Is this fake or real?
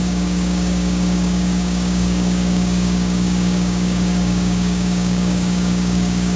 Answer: fake